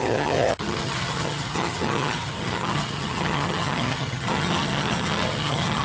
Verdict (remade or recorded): remade